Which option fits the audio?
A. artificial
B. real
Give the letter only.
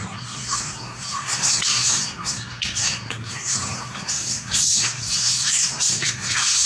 A